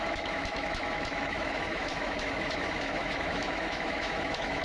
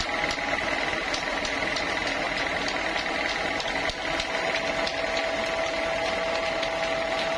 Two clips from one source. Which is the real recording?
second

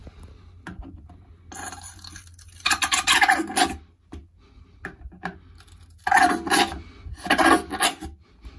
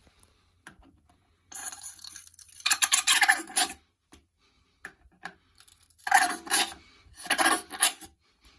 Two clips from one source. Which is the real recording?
first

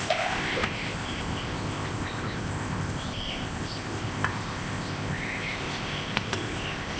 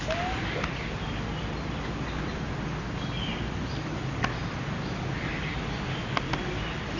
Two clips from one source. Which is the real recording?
second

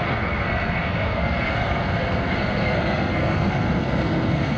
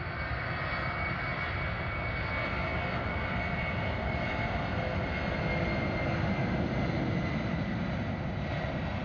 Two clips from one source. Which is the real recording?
second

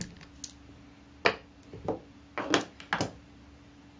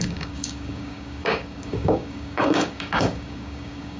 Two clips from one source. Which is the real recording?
first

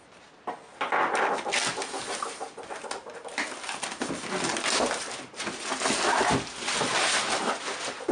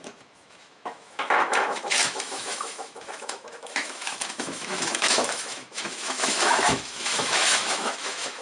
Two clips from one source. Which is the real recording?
first